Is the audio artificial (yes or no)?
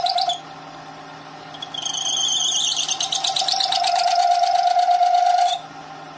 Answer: no